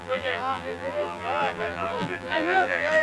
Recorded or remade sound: remade